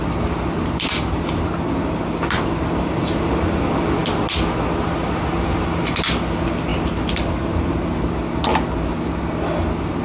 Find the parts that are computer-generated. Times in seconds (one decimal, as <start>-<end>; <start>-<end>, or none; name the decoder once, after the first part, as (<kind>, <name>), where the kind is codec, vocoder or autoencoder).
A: none

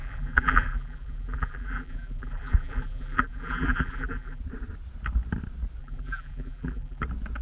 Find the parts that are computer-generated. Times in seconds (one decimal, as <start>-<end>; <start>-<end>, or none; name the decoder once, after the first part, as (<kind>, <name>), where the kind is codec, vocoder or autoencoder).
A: 0.0-4.4 (vocoder, BigVGAN v2); 5.8-7.0

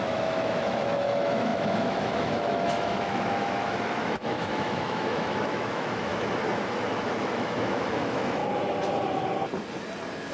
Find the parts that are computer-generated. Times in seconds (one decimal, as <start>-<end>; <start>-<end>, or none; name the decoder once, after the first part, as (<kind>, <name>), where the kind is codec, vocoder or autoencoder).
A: 0.0-6.1 (autoencoder, DAC-VAE); 6.9-8.4

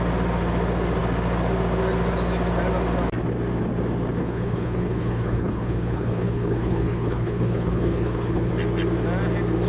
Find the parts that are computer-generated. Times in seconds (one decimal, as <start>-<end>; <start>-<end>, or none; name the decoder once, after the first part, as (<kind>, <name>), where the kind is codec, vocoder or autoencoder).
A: 4.2-8.5 (codec, HILCodec)

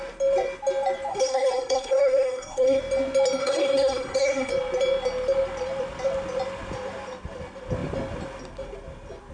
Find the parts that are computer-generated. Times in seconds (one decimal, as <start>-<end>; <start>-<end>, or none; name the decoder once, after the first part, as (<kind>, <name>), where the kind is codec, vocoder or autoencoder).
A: 1.1-2.8 (codec, SNAC); 3.4-4.5

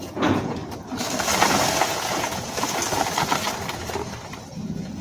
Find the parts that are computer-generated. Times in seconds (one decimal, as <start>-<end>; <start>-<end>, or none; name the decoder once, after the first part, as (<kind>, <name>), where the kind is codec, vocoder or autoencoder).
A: 0.0-0.6 (vocoder, Vocos); 1.8-2.8; 4.5-5.0